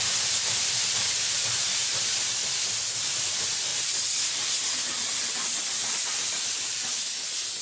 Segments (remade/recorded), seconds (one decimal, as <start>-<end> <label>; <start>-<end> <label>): 0.0-3.7 remade; 3.7-4.3 recorded; 4.3-7.6 remade

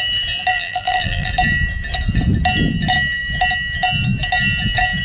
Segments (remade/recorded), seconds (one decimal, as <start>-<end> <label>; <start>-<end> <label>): 0.0-0.5 recorded; 0.5-1.3 remade; 1.3-5.0 recorded

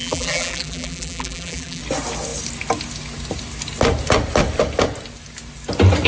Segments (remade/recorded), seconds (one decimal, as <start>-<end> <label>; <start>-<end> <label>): 0.0-1.8 remade; 1.8-6.1 recorded

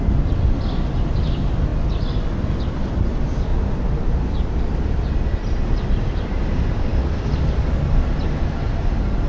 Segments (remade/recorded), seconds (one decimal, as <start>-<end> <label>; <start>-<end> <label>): 0.0-1.7 remade; 1.7-2.2 recorded; 2.2-3.5 remade; 3.5-4.7 recorded; 4.7-9.3 remade

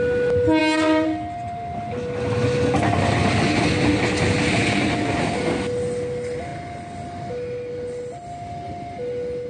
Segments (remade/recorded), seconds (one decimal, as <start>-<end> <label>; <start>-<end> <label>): 0.0-9.5 recorded